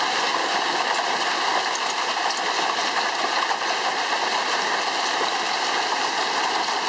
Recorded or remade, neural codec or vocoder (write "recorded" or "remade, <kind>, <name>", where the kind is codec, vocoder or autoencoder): recorded